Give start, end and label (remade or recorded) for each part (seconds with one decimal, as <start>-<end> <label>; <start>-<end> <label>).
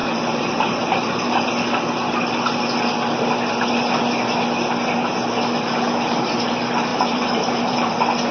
0.0-1.5 remade; 1.5-6.9 recorded; 6.9-7.9 remade; 7.9-8.3 recorded